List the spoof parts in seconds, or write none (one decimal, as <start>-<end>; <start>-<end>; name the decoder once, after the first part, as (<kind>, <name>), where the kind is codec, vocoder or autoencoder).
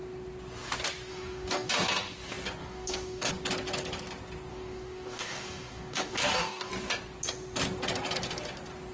1.1-1.7 (codec, DAC); 2.6-3.3; 4.5-6.7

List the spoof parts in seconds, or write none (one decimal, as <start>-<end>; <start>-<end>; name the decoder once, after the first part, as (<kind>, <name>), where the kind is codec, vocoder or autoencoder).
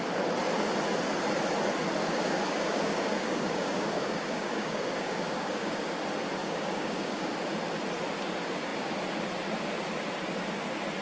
2.0-5.9 (codec, DAC); 6.4-7.3